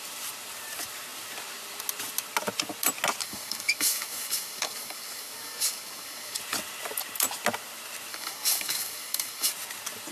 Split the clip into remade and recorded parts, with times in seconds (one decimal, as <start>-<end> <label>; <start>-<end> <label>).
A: 0.0-3.2 recorded; 3.2-6.4 remade; 6.4-8.1 recorded; 8.1-9.5 remade; 9.5-10.1 recorded